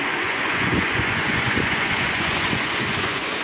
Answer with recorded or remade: remade